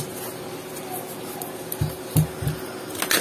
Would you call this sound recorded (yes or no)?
yes